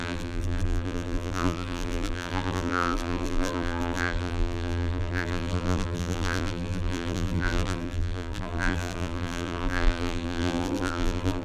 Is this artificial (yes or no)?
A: yes